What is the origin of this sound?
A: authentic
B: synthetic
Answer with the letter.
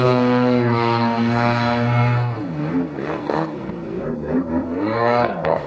B